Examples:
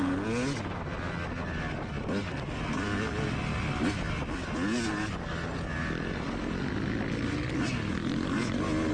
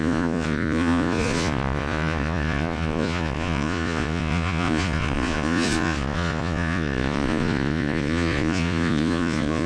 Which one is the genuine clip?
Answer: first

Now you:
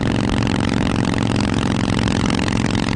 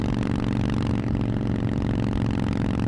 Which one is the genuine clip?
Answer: second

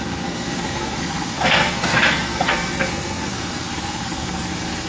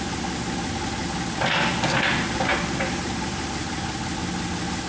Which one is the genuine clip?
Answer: second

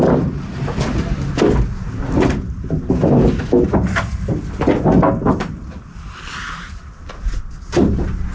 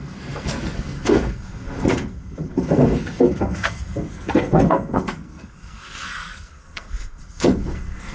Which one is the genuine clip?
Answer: first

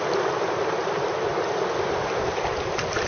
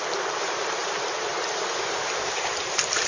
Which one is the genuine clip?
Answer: second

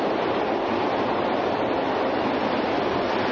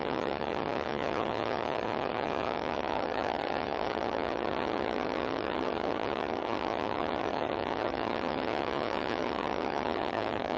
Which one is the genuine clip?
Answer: first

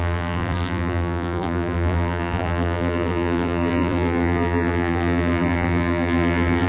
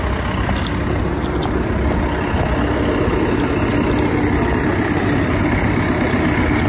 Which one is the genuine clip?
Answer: second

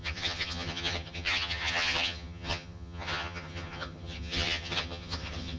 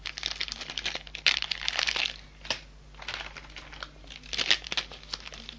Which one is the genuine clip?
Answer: second